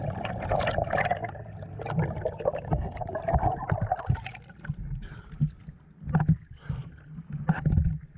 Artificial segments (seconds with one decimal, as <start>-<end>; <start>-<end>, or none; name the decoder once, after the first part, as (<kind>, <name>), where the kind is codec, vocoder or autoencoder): none